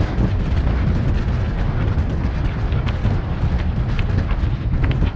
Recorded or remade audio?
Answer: recorded